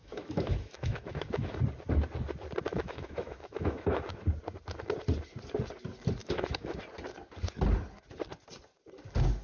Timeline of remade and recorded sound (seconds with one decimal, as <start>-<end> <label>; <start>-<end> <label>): 0.0-1.6 remade; 1.6-2.7 recorded; 2.7-4.1 remade; 4.1-6.2 recorded; 6.2-6.8 remade; 6.8-9.4 recorded